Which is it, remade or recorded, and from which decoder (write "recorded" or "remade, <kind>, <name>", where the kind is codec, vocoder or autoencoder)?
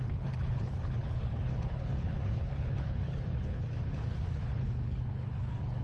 remade, codec, HILCodec